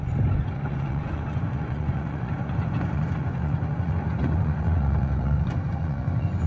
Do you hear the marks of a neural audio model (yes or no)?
yes